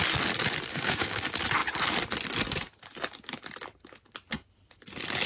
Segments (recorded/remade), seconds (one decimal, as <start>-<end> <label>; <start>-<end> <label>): 0.0-0.7 recorded; 0.7-1.2 remade; 1.2-5.3 recorded